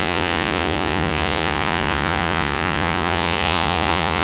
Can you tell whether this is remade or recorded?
remade